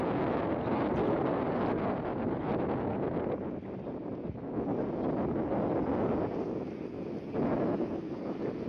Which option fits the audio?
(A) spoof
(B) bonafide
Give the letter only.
B